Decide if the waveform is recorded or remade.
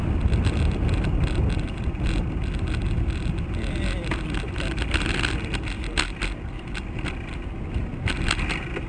recorded